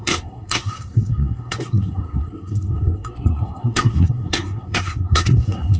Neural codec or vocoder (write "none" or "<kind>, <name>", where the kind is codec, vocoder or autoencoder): codec, SNAC